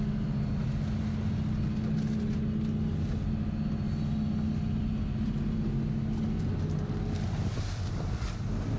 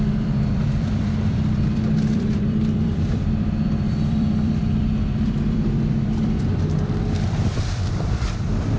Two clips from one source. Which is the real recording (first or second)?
first